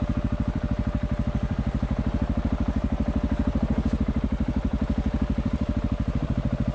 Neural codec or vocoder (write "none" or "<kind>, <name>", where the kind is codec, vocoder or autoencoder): vocoder, BigVGAN v2